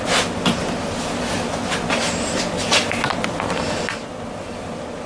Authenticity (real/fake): real